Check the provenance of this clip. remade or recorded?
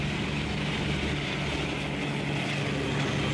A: recorded